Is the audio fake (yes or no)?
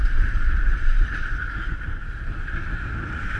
no